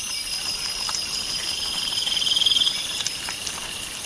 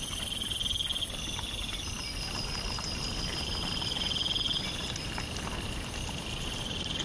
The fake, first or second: first